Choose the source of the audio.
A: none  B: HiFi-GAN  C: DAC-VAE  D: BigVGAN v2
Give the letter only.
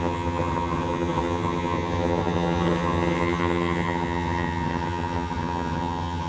B